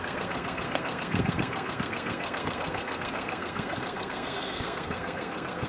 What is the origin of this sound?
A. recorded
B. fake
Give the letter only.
B